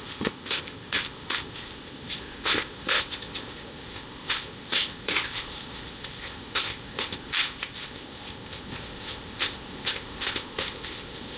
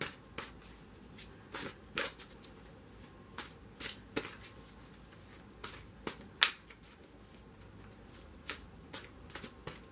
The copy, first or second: first